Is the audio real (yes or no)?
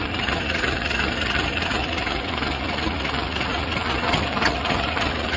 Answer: no